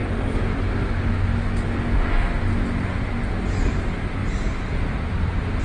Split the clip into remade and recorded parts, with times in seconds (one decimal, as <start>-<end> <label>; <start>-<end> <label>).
0.0-5.6 recorded